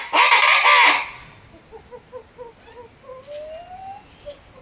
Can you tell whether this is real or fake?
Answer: real